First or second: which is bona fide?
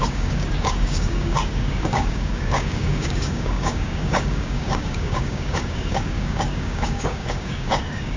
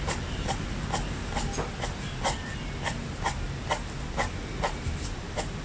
second